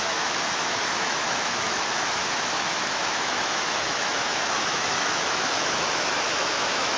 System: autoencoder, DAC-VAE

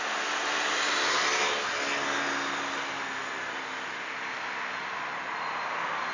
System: none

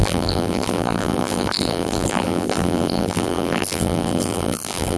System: vocoder, BigVGAN v2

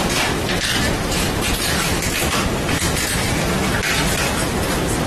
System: none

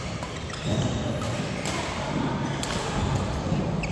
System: none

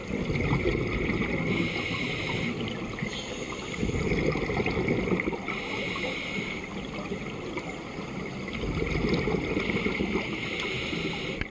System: none